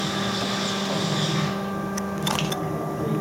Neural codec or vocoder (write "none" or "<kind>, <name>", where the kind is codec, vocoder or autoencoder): none